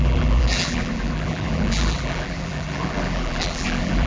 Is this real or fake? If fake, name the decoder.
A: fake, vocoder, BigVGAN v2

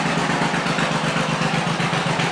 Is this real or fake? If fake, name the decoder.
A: real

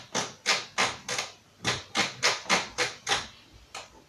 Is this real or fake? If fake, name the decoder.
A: real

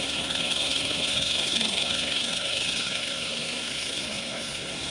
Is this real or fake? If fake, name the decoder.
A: fake, codec, SNAC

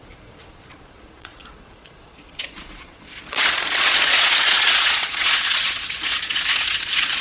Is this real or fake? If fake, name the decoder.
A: fake, vocoder, Vocos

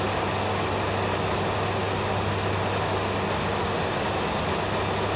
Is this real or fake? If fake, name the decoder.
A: real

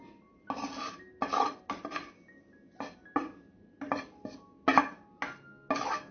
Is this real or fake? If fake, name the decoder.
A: real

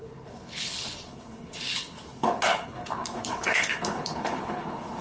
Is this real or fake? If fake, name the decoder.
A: fake, codec, HILCodec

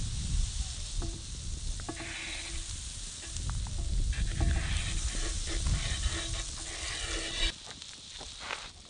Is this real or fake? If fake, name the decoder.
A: real